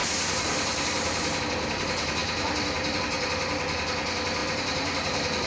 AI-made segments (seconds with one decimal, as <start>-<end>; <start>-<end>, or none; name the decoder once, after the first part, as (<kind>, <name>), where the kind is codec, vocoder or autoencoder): 0.0-1.4 (vocoder, BigVGAN v2); 4.4-5.5